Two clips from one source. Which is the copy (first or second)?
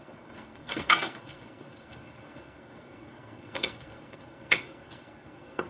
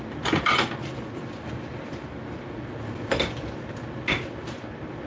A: first